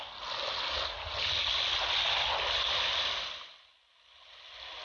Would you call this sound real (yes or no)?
yes